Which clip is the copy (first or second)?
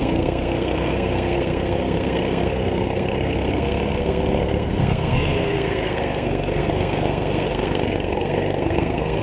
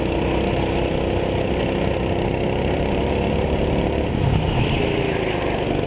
first